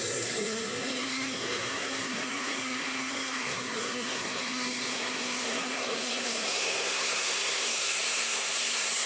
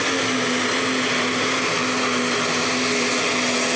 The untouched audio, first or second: second